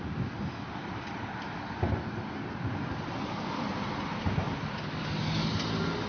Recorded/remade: recorded